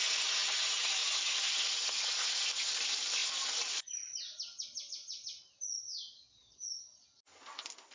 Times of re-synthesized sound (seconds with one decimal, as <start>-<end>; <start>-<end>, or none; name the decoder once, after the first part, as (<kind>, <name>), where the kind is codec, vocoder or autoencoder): none